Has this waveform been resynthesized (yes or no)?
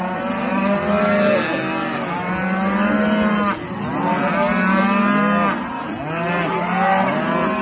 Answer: no